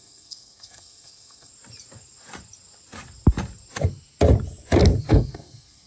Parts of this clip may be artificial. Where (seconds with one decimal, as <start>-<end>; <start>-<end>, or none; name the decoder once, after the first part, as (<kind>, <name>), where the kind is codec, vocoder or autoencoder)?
0.0-1.5 (codec, SNAC); 5.0-5.9

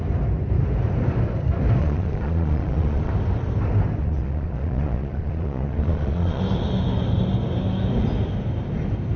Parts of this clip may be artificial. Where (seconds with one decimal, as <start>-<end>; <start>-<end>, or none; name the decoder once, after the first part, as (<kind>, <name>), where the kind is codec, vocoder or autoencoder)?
1.8-3.1 (vocoder, Vocos); 4.0-6.4

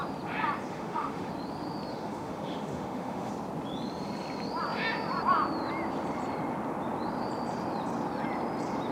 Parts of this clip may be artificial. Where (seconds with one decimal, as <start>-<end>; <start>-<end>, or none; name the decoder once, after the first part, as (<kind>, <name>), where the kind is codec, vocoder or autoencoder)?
0.7-1.3 (autoencoder, DAC-VAE); 1.9-3.3